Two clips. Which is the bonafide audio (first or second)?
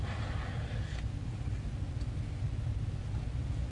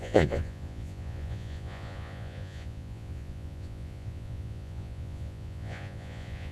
first